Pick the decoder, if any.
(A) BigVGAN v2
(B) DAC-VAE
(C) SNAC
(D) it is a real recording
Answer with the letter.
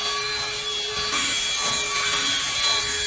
D